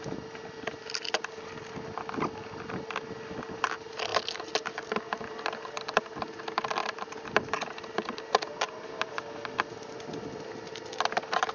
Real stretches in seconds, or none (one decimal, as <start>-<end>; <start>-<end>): 0.0-4.1; 5.3-6.8; 8.8-11.5